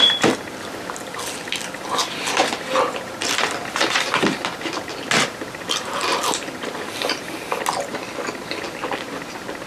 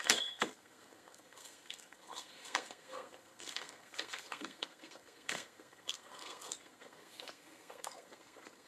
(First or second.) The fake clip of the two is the second